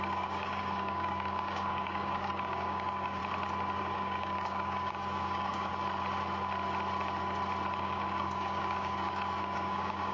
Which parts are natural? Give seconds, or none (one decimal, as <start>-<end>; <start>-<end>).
3.2-3.8; 5.7-7.8

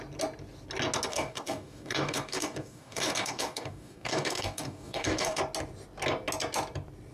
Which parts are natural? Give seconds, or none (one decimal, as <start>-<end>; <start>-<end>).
0.0-1.1; 5.4-7.1

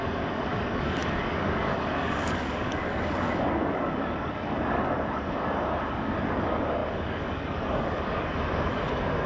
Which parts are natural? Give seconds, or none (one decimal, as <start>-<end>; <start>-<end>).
none

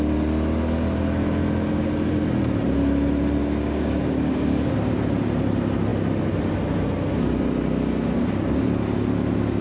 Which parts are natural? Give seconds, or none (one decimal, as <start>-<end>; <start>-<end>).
0.0-3.4; 4.7-9.6

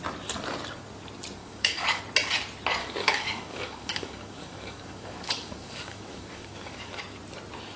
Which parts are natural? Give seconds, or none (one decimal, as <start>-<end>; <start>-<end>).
0.0-1.4; 2.0-2.8; 7.0-7.8